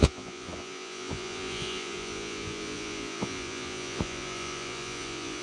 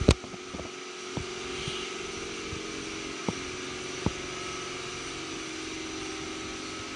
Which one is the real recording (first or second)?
second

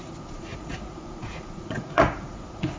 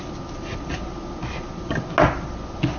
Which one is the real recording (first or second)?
second